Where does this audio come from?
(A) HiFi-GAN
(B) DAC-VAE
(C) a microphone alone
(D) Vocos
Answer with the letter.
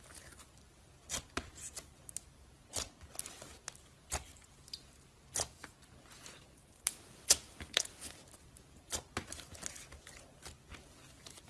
C